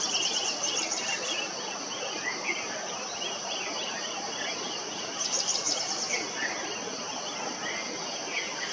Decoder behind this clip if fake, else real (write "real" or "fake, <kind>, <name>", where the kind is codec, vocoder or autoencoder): real